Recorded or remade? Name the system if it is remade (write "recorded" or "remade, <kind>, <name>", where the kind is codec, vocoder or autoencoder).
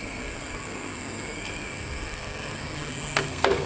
remade, codec, SNAC